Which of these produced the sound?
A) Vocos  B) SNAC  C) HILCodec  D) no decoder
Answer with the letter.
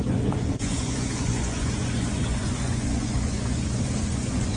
A